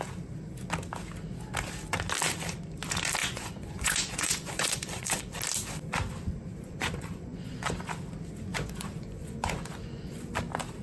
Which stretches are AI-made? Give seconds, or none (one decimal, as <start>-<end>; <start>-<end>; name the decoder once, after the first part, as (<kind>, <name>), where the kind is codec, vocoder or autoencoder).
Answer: 3.2-5.2 (vocoder, Vocos); 6.5-7.8; 8.5-10.4